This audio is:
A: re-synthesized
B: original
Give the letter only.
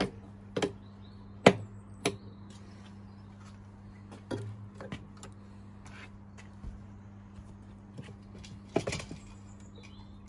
B